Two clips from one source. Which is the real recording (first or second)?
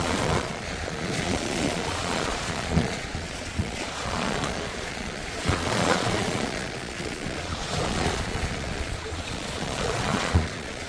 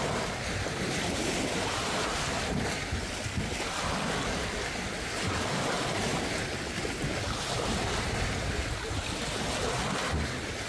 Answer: second